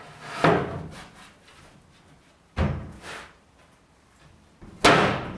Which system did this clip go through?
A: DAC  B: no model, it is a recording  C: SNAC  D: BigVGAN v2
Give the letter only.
B